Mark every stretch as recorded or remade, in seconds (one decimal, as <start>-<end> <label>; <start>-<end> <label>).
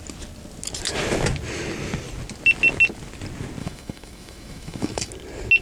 0.0-3.6 recorded; 3.6-5.1 remade; 5.1-5.6 recorded